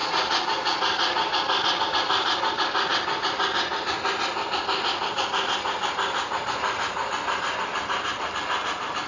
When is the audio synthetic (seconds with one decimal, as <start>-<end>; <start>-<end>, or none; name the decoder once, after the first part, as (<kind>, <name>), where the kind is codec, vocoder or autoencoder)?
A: none